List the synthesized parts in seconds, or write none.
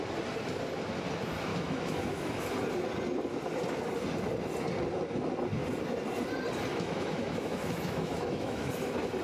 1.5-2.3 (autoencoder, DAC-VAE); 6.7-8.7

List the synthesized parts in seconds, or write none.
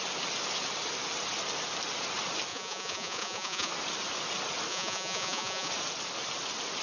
2.5-3.7 (vocoder, Vocos); 4.7-5.7